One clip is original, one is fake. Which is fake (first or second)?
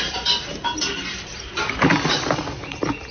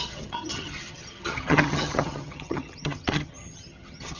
second